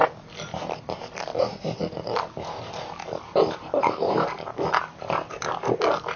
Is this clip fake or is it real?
real